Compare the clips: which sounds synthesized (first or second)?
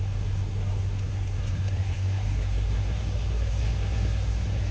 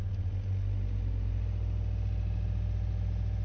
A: first